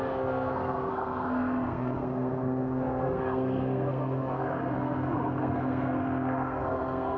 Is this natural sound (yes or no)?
no